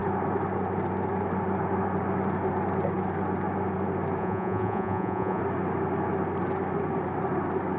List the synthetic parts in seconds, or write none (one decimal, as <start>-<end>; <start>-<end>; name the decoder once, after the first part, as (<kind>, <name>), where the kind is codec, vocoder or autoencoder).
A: 4.2-5.4 (vocoder, Vocos)

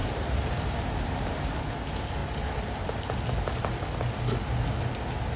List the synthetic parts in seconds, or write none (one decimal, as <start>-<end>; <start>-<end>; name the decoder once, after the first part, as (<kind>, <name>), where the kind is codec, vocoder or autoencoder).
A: 0.0-1.6 (vocoder, BigVGAN v2)

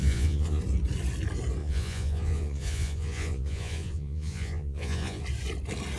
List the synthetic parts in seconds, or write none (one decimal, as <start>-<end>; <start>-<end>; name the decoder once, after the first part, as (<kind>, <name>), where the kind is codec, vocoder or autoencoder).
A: 0.0-0.6 (vocoder, Vocos); 1.6-5.2

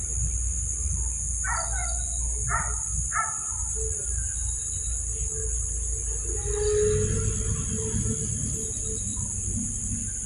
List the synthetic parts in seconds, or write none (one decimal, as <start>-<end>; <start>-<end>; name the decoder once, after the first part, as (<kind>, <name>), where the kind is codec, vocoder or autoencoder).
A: none

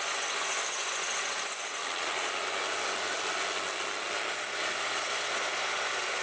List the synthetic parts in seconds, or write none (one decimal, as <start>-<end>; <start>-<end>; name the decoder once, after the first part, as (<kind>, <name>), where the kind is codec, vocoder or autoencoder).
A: 0.0-1.8 (vocoder, Vocos); 4.3-6.2

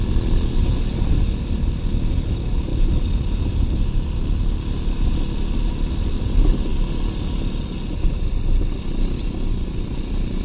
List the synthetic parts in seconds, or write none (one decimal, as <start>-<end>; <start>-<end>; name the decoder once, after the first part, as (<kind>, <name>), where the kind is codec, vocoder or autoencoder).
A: none

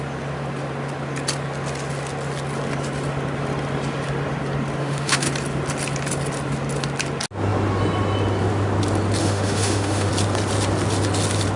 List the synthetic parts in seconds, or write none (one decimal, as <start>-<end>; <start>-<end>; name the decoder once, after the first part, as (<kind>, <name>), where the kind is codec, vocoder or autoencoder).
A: 4.8-5.3 (autoencoder, DAC-VAE); 9.2-10.1

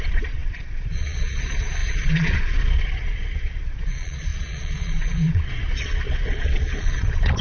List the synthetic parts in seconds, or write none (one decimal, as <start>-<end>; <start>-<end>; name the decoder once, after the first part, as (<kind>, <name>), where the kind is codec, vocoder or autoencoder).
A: 0.0-7.4 (vocoder, Vocos)